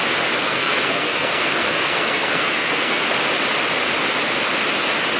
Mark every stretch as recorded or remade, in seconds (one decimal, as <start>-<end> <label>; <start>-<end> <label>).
0.0-0.4 recorded; 0.4-3.0 remade; 3.0-5.2 recorded